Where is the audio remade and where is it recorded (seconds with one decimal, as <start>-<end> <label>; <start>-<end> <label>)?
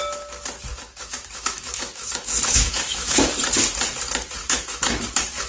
0.0-0.7 recorded; 0.7-3.3 remade; 3.3-4.4 recorded; 4.4-5.5 remade